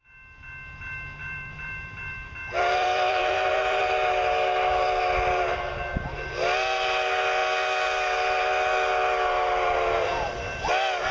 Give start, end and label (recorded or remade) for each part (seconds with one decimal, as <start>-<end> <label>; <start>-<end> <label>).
0.0-1.2 recorded; 1.2-3.8 remade; 3.8-11.1 recorded